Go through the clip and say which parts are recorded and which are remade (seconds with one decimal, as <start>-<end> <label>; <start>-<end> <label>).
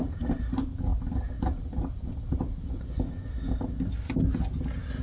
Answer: 0.0-5.0 recorded